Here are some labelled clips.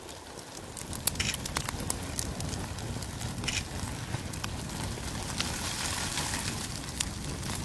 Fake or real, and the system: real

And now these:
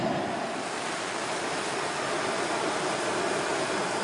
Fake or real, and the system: real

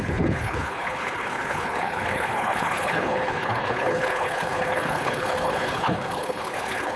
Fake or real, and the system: fake, codec, HILCodec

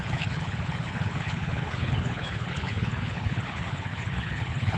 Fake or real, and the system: fake, codec, HILCodec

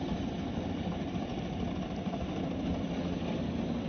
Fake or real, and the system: real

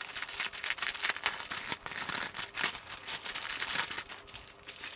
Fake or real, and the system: real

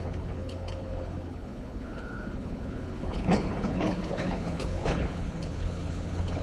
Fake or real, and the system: fake, codec, HILCodec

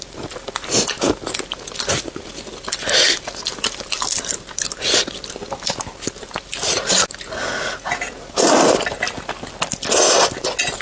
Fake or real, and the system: real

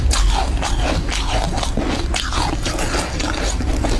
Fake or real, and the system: real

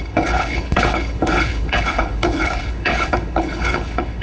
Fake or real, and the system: fake, codec, HILCodec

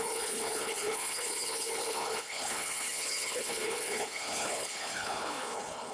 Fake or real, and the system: fake, codec, HILCodec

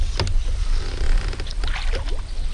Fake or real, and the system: real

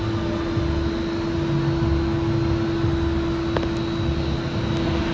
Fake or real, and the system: real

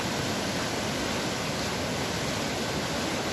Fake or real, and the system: real